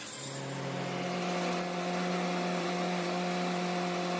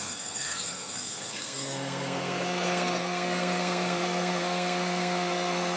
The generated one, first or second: second